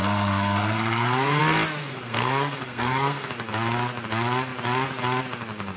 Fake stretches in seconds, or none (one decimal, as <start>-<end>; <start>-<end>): 0.0-1.4; 1.8-3.3